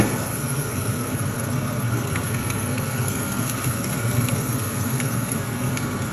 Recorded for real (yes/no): no